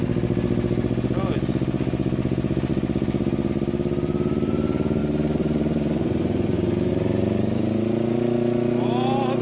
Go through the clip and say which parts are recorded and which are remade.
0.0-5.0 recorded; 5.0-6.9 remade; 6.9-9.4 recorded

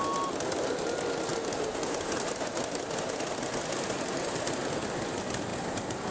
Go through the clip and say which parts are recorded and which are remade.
0.0-1.3 recorded; 1.3-2.5 remade; 2.5-5.5 recorded; 5.5-6.1 remade